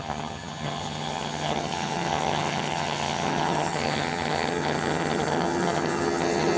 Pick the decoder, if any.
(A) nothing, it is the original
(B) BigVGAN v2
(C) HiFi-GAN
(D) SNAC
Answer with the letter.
C